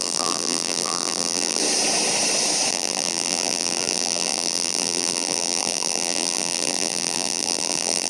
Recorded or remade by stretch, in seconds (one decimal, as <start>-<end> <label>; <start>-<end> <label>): 0.0-1.6 remade; 1.6-2.7 recorded; 2.7-8.1 remade